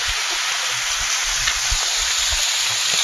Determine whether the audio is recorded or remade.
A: recorded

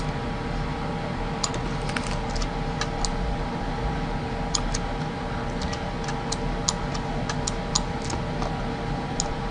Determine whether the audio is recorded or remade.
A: recorded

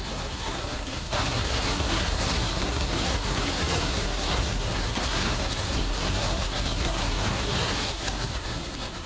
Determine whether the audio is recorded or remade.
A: remade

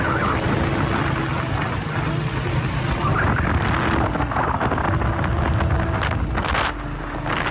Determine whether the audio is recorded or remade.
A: recorded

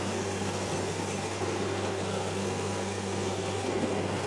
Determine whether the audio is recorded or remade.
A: remade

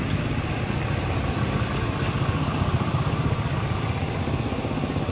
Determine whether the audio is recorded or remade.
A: recorded